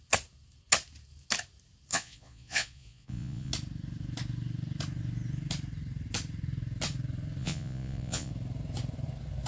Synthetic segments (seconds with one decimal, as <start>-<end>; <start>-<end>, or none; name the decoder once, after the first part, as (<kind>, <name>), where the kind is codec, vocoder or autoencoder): 1.9-3.5 (vocoder, Vocos); 7.4-8.3